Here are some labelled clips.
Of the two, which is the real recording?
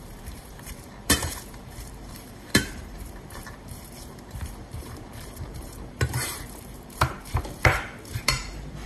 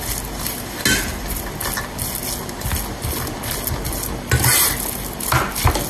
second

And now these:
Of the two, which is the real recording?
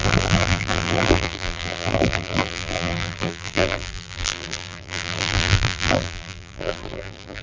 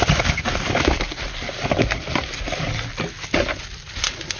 second